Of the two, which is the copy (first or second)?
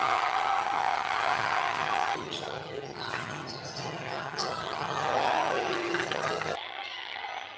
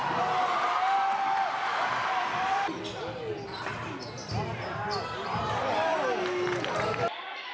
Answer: first